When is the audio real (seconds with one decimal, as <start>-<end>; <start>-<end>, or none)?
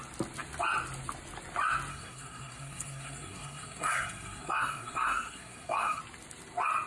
0.0-1.9; 6.0-6.9